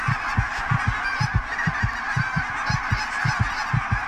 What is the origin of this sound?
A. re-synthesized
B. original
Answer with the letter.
B